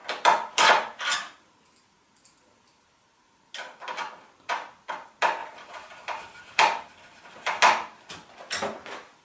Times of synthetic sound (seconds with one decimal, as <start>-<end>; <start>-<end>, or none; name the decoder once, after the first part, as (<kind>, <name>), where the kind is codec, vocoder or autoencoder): 5.4-6.6 (vocoder, BigVGAN v2)